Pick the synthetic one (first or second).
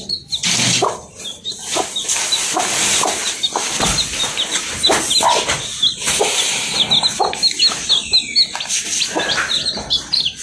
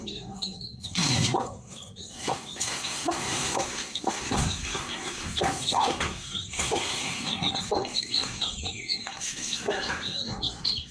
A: second